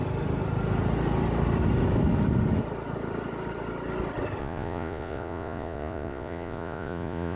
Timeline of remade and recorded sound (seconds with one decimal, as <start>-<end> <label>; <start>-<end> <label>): 0.0-4.4 recorded; 4.4-7.4 remade